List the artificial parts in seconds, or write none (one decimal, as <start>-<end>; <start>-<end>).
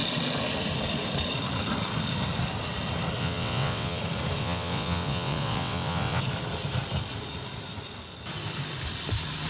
3.2-4.0; 4.4-6.2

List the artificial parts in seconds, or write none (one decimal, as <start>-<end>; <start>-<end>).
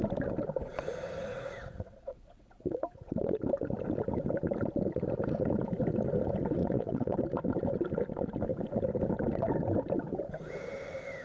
1.3-3.4; 6.6-7.2